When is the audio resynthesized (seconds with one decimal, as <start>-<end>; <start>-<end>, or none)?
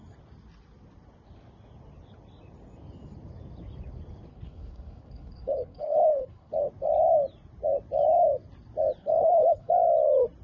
4.3-6.5; 9.0-9.7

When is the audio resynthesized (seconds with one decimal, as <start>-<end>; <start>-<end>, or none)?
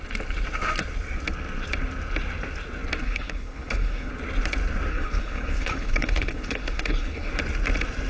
3.0-4.1; 4.9-7.3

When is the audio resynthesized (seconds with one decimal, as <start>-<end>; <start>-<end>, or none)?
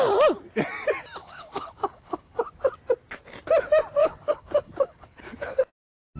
1.2-2.4; 4.0-5.6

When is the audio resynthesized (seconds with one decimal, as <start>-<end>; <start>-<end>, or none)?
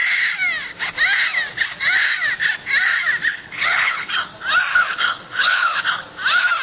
3.3-4.1; 4.7-5.8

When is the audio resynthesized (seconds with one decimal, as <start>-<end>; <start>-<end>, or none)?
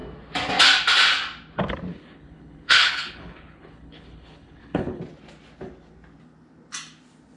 1.9-5.0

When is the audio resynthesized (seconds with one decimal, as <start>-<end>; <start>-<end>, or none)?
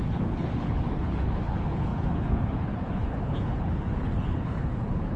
0.0-5.2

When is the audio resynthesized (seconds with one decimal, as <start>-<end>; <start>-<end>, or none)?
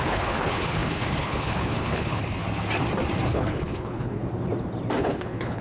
0.0-2.4; 3.3-4.2; 5.0-5.6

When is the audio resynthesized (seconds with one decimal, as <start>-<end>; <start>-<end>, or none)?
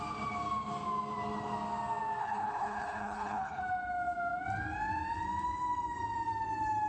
2.2-3.6